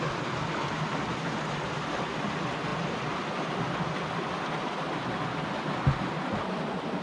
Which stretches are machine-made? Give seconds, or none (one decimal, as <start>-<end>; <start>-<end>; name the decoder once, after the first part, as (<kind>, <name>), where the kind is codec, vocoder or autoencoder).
none